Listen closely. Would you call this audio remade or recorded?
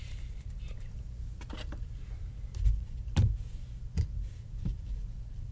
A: remade